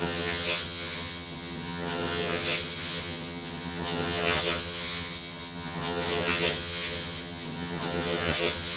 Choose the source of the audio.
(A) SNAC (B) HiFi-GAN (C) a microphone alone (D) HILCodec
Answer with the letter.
B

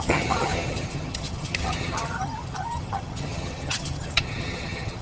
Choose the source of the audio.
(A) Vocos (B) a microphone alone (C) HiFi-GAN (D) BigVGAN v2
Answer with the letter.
C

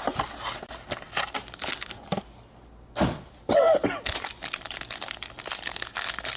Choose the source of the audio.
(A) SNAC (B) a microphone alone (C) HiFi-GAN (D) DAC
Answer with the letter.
B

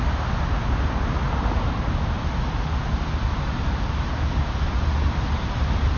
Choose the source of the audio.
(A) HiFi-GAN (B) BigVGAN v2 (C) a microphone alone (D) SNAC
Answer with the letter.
C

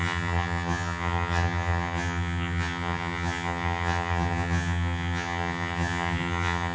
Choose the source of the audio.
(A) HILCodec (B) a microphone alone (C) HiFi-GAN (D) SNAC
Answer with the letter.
C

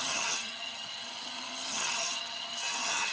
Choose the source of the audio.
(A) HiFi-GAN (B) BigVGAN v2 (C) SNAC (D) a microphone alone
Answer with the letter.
A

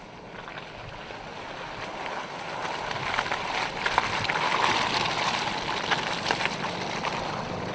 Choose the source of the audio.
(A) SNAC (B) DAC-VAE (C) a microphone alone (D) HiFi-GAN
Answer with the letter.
C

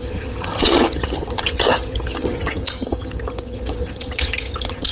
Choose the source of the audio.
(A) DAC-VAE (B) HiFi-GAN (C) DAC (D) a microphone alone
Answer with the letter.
B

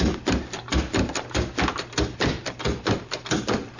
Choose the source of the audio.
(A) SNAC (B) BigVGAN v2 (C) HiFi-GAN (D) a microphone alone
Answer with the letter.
D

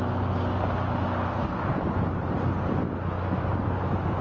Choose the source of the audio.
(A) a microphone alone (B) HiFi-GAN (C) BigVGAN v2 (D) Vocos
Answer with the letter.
A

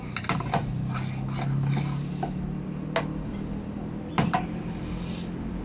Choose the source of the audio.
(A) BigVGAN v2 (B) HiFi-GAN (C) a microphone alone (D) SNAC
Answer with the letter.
C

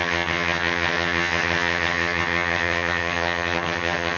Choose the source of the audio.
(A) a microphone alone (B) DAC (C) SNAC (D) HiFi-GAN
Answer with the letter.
D